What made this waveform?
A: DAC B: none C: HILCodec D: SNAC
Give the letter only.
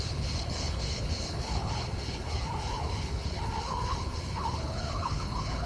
C